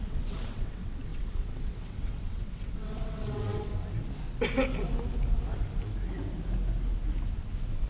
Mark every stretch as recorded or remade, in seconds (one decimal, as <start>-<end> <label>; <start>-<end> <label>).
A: 0.0-3.7 remade; 3.7-7.9 recorded